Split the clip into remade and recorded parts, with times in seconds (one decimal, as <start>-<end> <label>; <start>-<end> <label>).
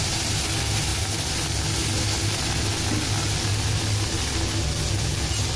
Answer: 0.0-5.6 recorded